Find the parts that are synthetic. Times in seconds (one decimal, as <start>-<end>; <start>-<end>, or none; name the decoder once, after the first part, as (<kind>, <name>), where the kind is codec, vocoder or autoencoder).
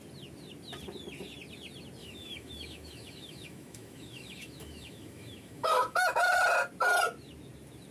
2.0-6.3 (autoencoder, DAC-VAE)